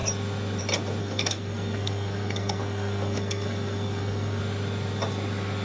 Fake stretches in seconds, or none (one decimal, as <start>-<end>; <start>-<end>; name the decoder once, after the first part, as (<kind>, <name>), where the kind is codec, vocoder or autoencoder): 1.0-4.4 (codec, SNAC)